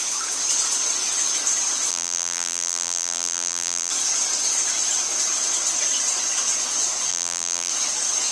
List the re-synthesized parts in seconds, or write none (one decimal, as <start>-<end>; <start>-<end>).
1.9-3.9; 7.1-7.7